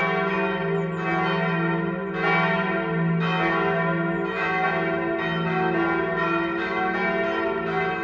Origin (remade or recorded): recorded